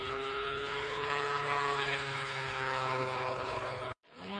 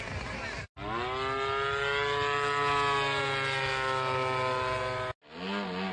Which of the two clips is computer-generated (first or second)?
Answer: first